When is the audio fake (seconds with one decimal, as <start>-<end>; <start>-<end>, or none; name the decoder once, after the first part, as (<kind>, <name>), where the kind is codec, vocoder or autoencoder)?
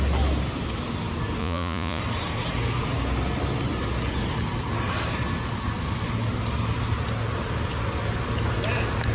1.4-2.0 (vocoder, Vocos)